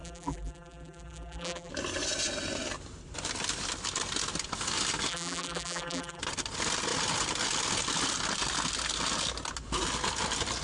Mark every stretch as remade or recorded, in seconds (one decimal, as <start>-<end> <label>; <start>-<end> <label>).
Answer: 0.0-1.7 remade; 1.7-5.1 recorded; 5.1-6.2 remade; 6.2-10.6 recorded